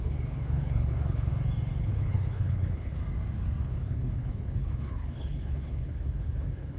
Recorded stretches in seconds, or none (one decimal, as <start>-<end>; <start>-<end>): 1.3-1.8; 3.0-3.6